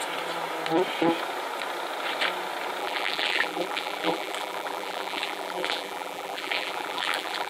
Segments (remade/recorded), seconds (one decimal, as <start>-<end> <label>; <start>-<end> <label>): 0.0-2.8 recorded; 2.8-7.5 remade